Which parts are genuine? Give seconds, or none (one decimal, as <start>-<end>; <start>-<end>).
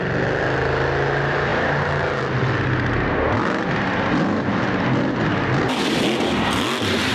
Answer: 0.0-7.1